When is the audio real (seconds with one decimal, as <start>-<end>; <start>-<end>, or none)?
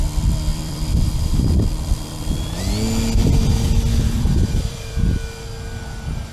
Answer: 0.0-0.5; 2.6-3.2; 5.1-6.3